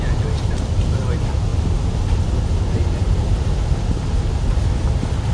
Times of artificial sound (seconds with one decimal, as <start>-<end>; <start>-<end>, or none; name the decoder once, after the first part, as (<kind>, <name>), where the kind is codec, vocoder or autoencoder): 0.4-1.0 (vocoder, BigVGAN v2)